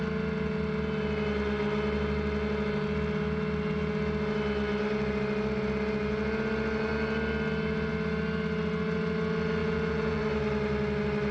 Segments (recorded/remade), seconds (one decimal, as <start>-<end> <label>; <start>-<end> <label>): 0.0-9.6 recorded; 9.6-10.2 remade; 10.2-11.3 recorded

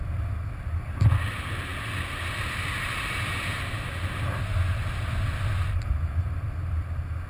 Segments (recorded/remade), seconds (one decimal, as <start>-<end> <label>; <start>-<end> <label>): 0.0-7.3 recorded

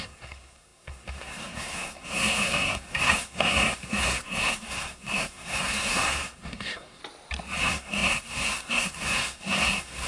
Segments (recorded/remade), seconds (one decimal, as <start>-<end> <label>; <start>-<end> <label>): 0.0-7.0 remade; 7.0-7.6 recorded; 7.6-10.1 remade

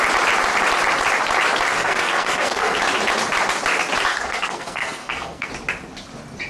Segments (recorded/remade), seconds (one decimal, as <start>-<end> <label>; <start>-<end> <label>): 0.0-1.7 recorded; 1.7-2.8 remade; 2.8-4.1 recorded; 4.1-5.5 remade; 5.5-6.5 recorded

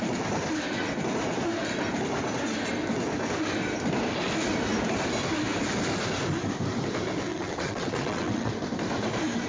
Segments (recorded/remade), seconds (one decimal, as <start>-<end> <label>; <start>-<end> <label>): 0.0-7.3 recorded; 7.3-8.5 remade; 8.5-9.5 recorded

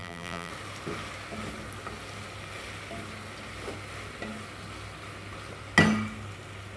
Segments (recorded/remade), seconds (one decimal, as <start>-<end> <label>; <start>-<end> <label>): 0.0-0.5 remade; 0.5-6.8 recorded